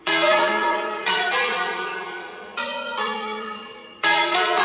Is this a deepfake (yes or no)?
yes